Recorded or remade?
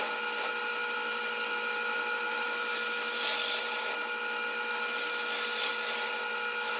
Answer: recorded